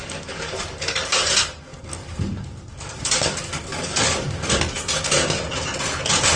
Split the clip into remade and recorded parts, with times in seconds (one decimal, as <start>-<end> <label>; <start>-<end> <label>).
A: 0.0-1.2 remade; 1.2-1.7 recorded; 1.7-4.6 remade; 4.6-6.4 recorded